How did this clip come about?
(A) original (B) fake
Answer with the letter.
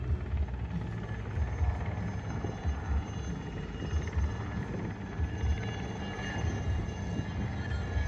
A